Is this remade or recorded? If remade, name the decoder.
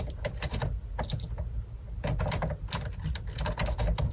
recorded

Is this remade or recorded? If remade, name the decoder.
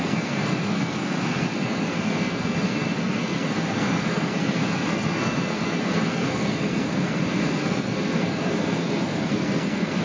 remade, codec, SNAC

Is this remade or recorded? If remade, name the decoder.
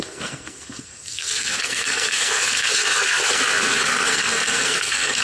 remade, codec, SNAC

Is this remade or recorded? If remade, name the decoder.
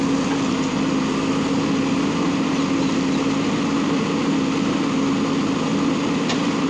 recorded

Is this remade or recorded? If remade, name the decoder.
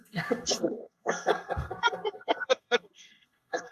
remade, codec, SNAC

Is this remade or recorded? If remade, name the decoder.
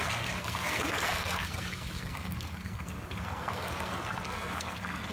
remade, codec, SNAC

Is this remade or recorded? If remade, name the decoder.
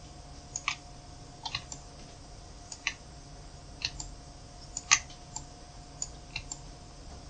recorded